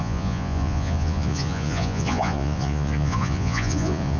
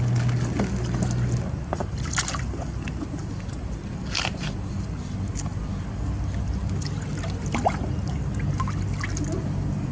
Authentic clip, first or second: second